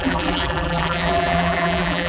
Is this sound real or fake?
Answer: fake